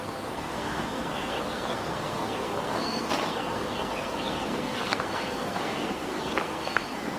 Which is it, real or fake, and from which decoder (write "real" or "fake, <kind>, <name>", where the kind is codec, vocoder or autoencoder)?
fake, codec, SNAC